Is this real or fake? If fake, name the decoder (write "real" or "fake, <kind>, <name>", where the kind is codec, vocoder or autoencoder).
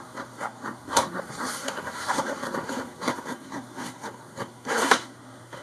fake, codec, SNAC